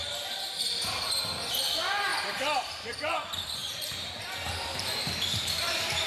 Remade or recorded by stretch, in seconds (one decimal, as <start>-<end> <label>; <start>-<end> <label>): 0.0-3.6 recorded; 3.6-4.2 remade; 4.2-6.1 recorded